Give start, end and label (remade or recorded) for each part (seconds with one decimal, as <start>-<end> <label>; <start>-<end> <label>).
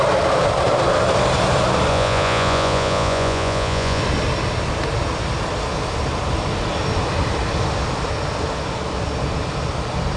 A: 0.0-1.9 recorded; 1.9-4.0 remade; 4.0-10.2 recorded